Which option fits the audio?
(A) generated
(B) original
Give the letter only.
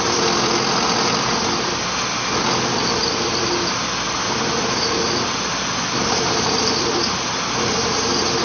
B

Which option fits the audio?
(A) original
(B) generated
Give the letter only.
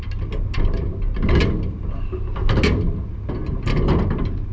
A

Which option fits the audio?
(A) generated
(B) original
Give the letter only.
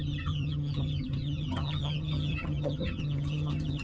A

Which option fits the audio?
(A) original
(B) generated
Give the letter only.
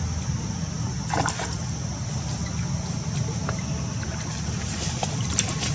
A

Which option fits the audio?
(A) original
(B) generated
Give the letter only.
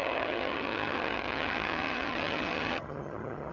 B